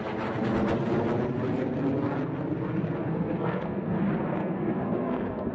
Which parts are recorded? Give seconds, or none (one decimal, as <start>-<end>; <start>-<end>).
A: 0.0-3.0; 4.0-4.4